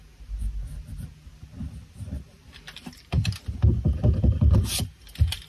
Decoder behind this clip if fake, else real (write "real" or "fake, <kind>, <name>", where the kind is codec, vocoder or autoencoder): real